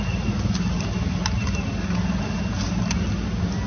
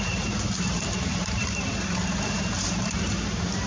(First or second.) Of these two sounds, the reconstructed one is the second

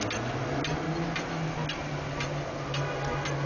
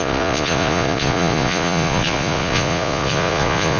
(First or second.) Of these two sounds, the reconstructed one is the second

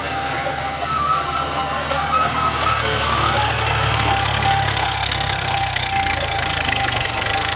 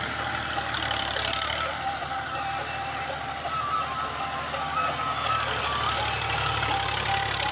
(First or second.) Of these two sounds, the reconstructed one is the first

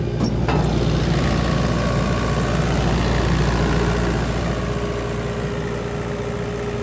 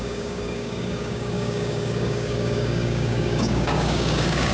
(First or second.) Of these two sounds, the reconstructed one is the second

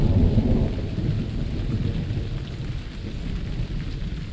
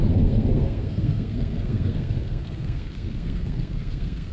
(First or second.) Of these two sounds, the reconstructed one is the second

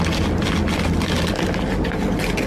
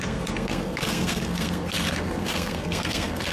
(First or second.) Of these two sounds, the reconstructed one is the second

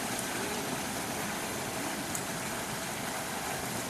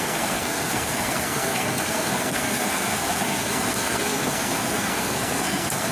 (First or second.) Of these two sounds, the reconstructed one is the second